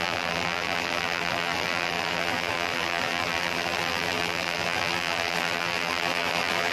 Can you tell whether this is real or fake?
fake